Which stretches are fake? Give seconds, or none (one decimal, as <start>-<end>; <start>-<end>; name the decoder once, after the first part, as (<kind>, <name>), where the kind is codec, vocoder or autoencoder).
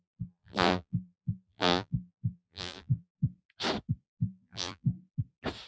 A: 0.0-3.2 (vocoder, BigVGAN v2); 4.2-4.9